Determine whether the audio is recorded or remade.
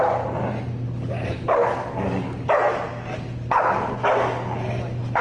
recorded